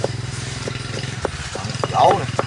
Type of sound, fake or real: fake